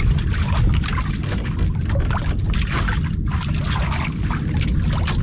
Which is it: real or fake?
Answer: real